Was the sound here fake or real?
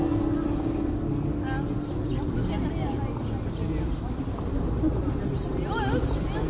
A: real